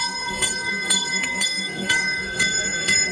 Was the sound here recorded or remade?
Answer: remade